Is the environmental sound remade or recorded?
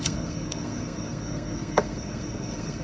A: remade